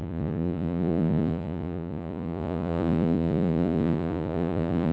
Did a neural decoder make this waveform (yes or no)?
yes